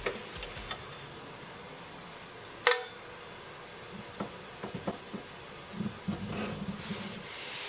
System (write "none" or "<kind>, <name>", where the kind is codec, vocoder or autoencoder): none